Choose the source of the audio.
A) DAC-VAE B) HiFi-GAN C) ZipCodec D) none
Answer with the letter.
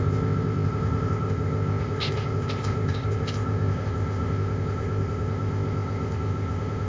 C